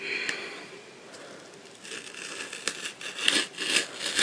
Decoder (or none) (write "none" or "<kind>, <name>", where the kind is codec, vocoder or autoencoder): none